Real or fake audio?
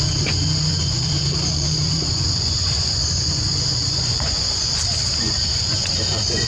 fake